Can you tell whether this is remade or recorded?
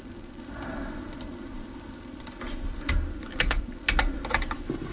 recorded